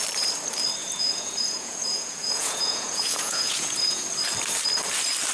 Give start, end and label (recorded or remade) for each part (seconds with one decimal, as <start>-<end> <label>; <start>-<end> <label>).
0.0-0.8 recorded; 0.8-4.0 remade; 4.0-5.3 recorded